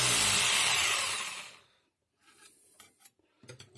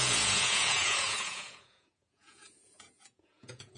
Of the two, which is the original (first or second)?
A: first